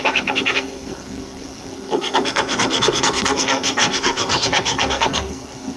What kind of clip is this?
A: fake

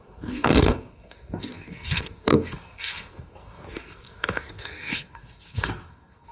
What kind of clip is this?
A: fake